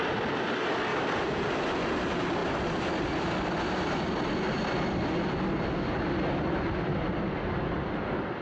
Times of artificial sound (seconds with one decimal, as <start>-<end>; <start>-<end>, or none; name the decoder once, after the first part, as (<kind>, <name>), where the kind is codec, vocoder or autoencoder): 0.9-1.5 (vocoder, BigVGAN v2); 6.9-7.4